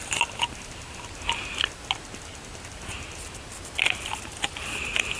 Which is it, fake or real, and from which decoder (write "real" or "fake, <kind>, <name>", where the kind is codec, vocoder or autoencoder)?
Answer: real